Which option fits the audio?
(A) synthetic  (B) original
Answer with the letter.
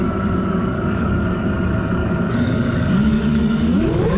A